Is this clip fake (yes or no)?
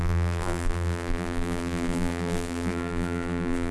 yes